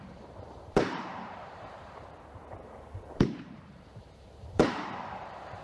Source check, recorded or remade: remade